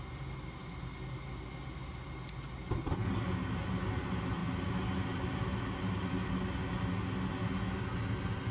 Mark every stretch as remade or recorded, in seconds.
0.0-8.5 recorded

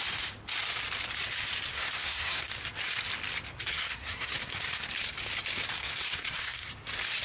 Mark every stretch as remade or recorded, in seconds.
0.0-1.7 recorded; 1.7-2.5 remade; 2.5-3.5 recorded; 3.5-4.9 remade; 4.9-5.8 recorded; 5.8-6.7 remade; 6.7-7.2 recorded

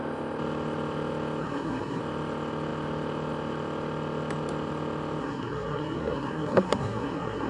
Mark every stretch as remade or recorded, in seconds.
0.0-1.4 recorded; 1.4-2.0 remade; 2.0-5.2 recorded; 5.2-7.5 remade

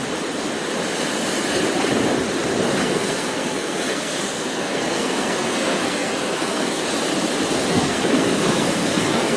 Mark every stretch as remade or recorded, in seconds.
0.0-2.8 recorded; 2.8-6.8 remade; 6.8-7.7 recorded; 7.7-9.4 remade

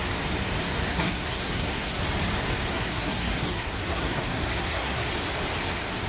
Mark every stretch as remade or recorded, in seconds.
0.0-0.9 recorded; 0.9-2.0 remade; 2.0-2.7 recorded; 2.7-5.1 remade; 5.1-6.1 recorded